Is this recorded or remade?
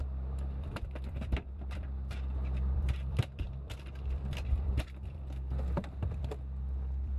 remade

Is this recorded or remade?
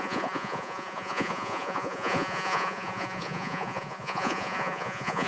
remade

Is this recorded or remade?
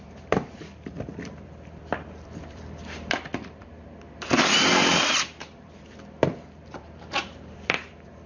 remade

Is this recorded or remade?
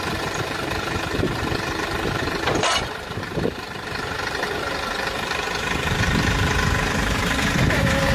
remade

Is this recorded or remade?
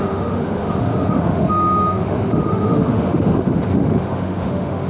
remade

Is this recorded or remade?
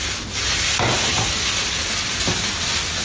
recorded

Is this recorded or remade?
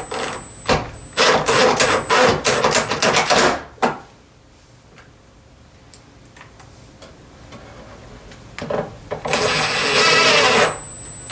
recorded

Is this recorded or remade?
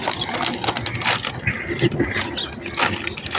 recorded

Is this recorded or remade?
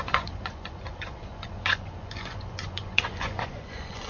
remade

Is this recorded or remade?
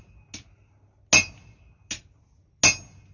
recorded